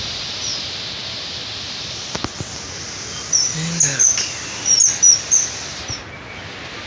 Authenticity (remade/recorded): recorded